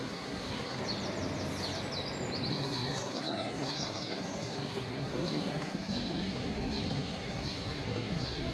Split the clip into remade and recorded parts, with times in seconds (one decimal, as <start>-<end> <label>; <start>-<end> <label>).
0.0-0.8 remade; 0.8-2.5 recorded; 2.5-8.5 remade